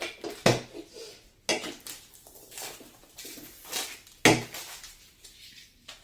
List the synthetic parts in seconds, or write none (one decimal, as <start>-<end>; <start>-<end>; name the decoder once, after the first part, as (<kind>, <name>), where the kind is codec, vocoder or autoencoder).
none